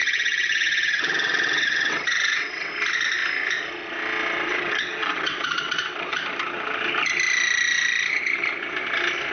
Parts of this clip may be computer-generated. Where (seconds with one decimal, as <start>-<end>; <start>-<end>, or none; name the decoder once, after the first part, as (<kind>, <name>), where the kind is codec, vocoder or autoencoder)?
0.0-2.7 (vocoder, WaveNeXt); 4.5-6.2